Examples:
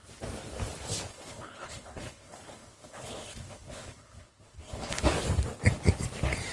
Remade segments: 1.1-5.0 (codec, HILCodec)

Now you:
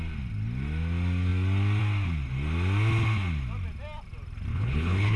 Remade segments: 4.5-5.2 (codec, HILCodec)

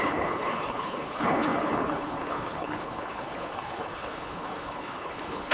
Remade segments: 0.0-5.5 (codec, HILCodec)

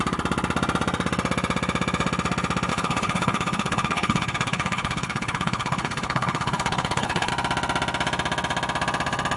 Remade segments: 2.7-7.3 (codec, HILCodec)